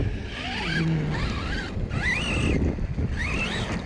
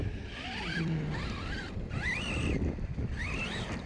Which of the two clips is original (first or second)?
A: first